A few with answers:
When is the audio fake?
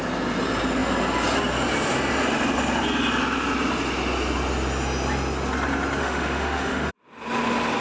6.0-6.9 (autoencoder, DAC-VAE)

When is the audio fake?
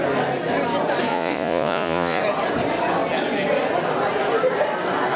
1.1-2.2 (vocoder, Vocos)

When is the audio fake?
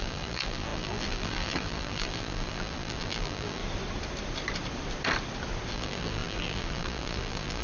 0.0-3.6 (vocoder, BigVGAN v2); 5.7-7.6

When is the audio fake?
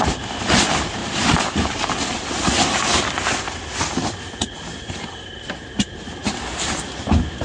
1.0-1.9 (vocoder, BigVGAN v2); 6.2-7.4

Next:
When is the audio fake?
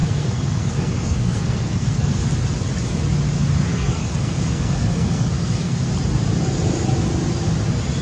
0.0-2.3 (codec, SNAC); 3.7-5.9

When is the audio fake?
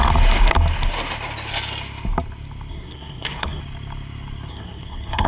2.7-3.6 (codec, SNAC); 4.5-5.3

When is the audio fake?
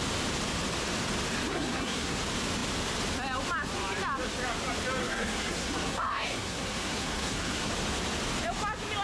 1.5-2.2 (codec, SNAC); 5.0-7.7